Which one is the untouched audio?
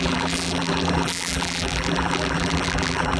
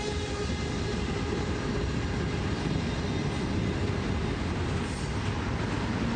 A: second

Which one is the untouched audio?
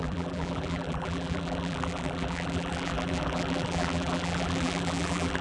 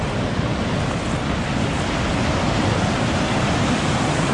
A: second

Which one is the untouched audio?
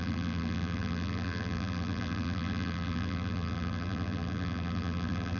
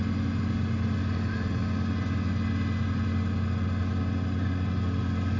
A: second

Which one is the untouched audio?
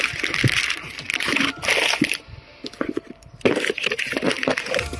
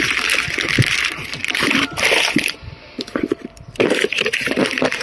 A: first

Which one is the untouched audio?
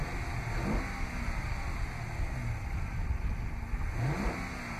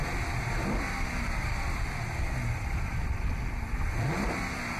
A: first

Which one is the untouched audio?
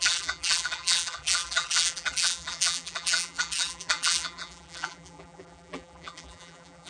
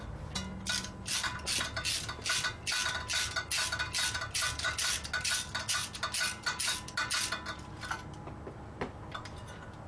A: second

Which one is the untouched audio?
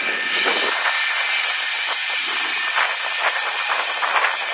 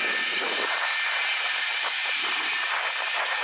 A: first